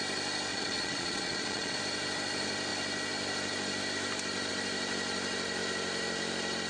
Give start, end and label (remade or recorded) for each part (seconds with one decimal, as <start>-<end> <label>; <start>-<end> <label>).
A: 0.0-0.5 recorded; 0.5-1.8 remade; 1.8-6.7 recorded